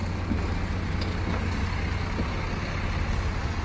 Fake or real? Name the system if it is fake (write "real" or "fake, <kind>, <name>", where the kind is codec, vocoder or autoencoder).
real